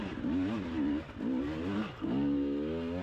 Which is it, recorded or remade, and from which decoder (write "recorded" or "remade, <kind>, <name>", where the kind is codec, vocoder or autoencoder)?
recorded